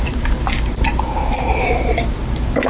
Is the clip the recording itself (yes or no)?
no